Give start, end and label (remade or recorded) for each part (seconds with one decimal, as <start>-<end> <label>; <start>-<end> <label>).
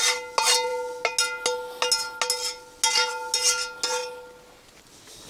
0.0-5.3 recorded